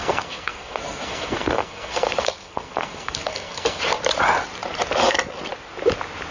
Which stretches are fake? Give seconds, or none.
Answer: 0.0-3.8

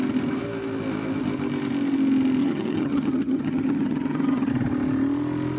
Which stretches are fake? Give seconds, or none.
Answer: 2.4-4.5

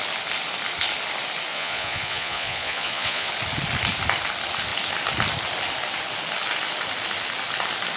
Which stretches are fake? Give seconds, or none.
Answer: 1.5-3.3

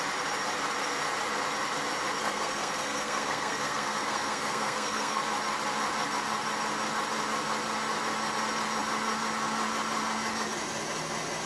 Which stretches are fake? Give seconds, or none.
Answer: 2.2-5.2

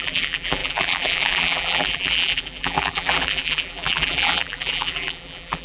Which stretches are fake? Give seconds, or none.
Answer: 0.0-5.6

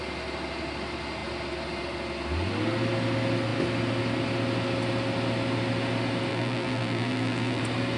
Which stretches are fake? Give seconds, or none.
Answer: 6.3-7.6

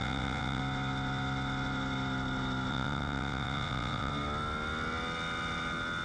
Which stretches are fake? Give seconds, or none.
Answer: 0.0-0.6; 2.7-4.1

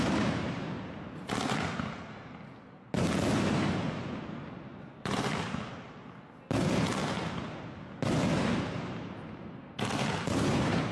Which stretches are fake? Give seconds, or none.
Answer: 4.7-5.2